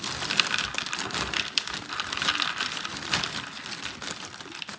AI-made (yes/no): no